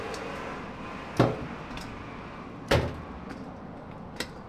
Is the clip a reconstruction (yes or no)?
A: no